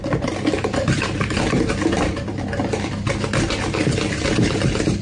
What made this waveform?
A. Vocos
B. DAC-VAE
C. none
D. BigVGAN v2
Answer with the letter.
D